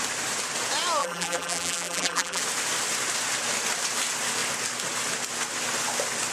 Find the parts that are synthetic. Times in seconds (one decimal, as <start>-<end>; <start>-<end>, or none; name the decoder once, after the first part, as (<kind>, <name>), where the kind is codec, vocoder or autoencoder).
1.0-2.4 (vocoder, BigVGAN v2)